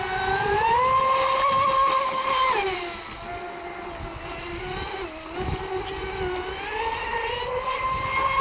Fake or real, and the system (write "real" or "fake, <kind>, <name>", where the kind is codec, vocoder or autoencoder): real